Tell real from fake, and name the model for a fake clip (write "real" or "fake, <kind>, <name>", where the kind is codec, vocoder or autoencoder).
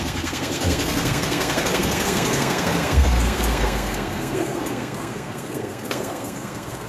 fake, codec, SNAC